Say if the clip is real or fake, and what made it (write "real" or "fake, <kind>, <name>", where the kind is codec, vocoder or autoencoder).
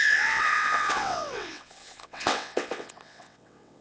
fake, vocoder, WaveNeXt